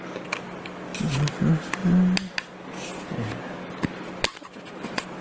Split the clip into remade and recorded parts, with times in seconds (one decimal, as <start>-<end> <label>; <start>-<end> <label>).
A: 0.0-5.2 recorded